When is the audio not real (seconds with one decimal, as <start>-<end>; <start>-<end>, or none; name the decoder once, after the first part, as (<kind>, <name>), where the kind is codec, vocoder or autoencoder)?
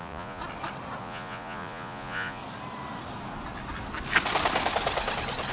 0.0-0.4 (vocoder, Vocos); 1.0-2.4